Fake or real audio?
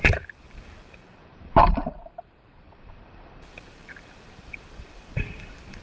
fake